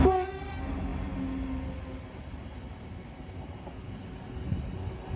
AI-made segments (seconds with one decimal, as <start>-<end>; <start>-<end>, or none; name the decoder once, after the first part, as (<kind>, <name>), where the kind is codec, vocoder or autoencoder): none